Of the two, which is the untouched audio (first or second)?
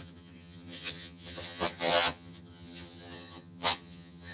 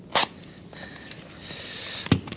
second